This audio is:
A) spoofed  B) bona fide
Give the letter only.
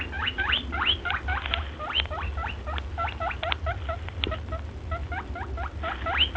B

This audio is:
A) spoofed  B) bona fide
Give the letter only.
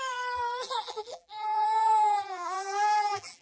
A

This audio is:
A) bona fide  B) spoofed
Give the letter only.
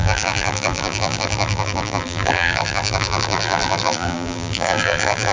B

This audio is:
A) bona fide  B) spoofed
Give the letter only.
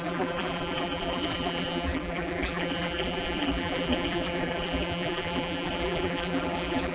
B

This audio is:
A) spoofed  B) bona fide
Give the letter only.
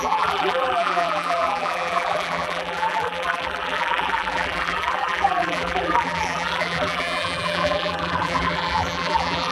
A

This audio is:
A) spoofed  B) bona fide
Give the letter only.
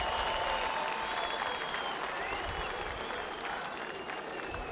A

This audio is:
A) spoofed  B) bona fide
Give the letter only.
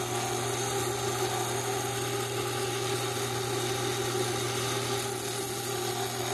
B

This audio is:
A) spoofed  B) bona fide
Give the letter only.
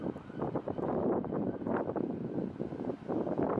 B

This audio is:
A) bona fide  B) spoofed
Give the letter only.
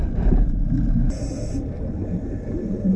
A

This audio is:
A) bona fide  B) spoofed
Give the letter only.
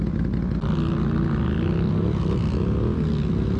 A